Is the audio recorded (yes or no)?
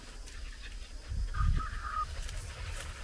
yes